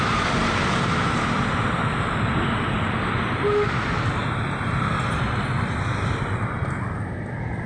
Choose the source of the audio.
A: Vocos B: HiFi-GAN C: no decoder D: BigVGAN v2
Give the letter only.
C